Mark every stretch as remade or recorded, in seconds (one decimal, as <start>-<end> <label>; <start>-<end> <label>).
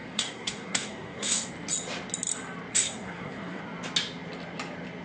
0.0-1.5 remade; 1.5-2.7 recorded; 2.7-3.6 remade; 3.6-5.0 recorded